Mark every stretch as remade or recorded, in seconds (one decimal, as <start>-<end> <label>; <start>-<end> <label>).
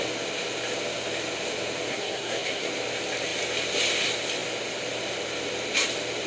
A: 0.0-1.9 recorded; 1.9-2.7 remade; 2.7-6.3 recorded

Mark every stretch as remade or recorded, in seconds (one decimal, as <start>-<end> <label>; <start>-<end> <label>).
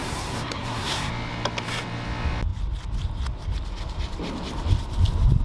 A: 0.0-1.1 remade; 1.1-5.4 recorded